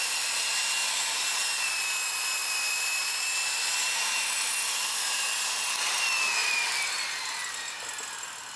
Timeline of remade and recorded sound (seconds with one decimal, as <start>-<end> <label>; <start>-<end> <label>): 0.0-2.4 recorded; 2.4-3.7 remade; 3.7-6.4 recorded; 6.4-6.9 remade; 6.9-8.6 recorded